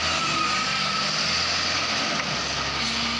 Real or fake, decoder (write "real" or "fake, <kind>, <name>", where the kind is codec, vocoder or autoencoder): real